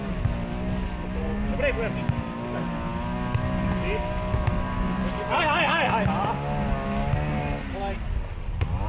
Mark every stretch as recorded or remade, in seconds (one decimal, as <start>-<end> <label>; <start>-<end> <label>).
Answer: 0.0-8.9 recorded